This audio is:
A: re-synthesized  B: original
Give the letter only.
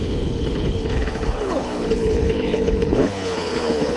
A